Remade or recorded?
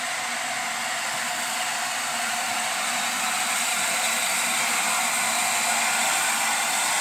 recorded